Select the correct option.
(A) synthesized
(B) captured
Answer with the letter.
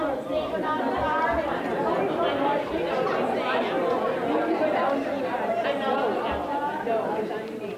B